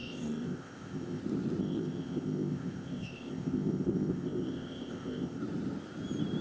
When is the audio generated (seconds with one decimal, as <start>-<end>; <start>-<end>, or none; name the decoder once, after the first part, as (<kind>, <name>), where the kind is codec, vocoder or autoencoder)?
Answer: 0.0-1.2 (codec, ZipCodec); 1.6-5.4